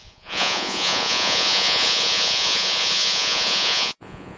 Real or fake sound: fake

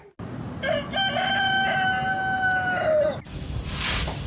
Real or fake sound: real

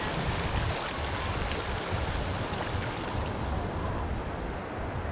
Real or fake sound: real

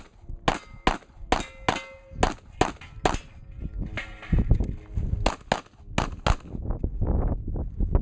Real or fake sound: real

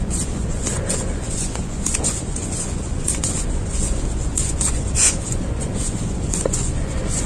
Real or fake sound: fake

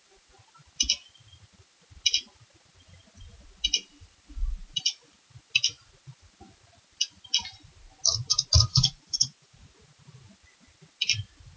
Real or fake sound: real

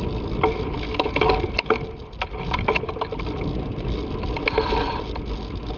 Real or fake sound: real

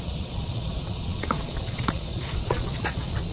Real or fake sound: fake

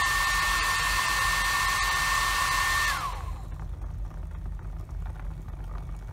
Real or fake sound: real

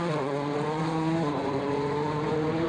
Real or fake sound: fake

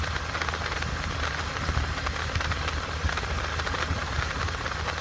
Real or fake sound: real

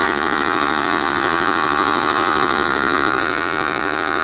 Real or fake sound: fake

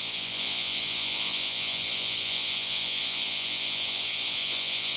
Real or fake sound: fake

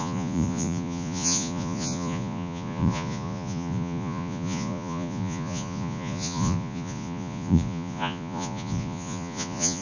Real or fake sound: fake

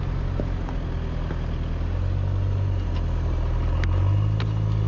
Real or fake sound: real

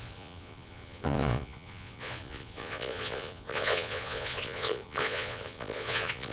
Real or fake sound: fake